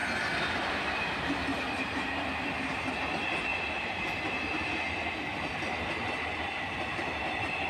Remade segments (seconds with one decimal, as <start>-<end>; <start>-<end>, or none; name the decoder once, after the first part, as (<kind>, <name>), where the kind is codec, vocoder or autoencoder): none